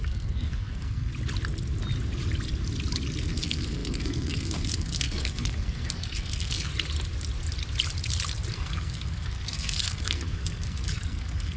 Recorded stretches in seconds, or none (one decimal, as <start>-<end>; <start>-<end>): 1.1-3.2; 6.7-8.5